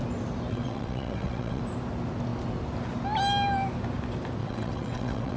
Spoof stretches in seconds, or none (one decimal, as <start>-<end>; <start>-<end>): 0.5-1.6; 4.4-5.4